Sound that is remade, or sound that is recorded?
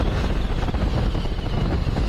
recorded